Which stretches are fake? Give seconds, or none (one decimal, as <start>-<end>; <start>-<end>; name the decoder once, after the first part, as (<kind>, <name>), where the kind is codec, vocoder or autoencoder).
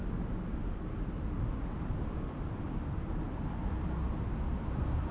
0.6-3.7 (vocoder, BigVGAN v2)